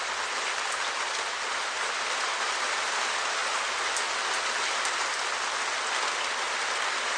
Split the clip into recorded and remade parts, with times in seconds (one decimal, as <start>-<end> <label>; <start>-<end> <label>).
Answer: 0.0-7.2 recorded